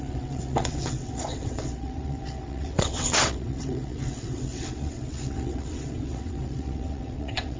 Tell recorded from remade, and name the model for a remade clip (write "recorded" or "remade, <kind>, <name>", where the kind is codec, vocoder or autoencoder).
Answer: remade, vocoder, WaveNeXt